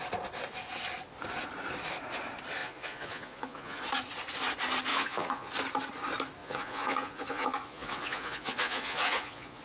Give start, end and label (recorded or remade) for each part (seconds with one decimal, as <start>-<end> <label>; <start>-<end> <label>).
0.0-2.6 recorded; 2.6-3.8 remade; 3.8-4.9 recorded; 4.9-5.5 remade; 5.5-6.4 recorded; 6.4-9.6 remade